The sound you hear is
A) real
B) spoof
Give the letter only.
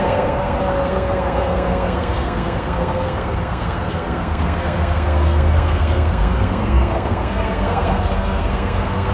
B